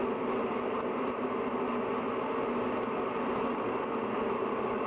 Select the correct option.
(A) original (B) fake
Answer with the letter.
A